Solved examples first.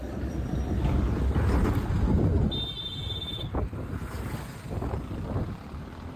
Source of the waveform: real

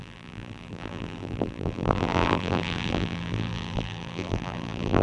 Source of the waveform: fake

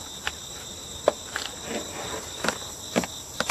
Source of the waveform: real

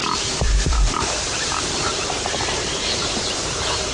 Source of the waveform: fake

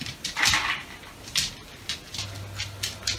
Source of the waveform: real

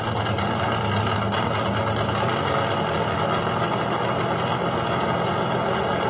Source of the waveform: real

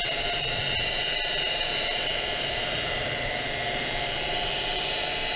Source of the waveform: fake